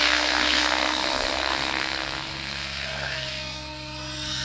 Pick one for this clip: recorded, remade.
remade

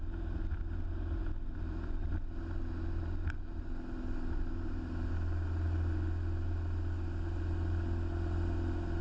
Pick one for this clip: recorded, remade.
recorded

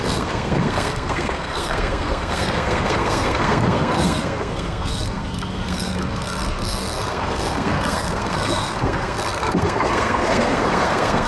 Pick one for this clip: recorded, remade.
remade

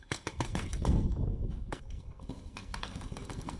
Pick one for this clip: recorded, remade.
remade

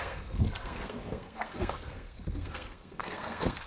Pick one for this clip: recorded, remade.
remade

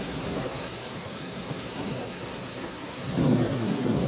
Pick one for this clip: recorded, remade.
remade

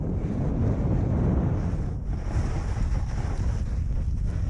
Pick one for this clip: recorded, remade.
recorded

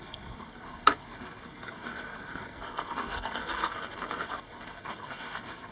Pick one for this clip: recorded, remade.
remade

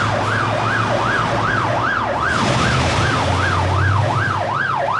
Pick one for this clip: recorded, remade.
recorded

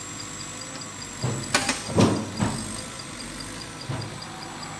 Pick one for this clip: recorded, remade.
recorded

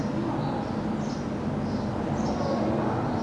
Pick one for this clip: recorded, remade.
recorded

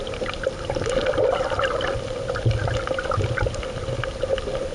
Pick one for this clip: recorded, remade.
recorded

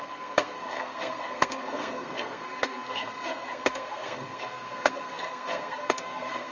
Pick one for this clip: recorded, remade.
remade